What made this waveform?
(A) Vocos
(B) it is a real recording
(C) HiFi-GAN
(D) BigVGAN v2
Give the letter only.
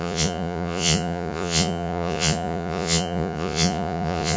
A